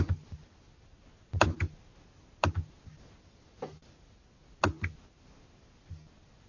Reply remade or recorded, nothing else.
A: recorded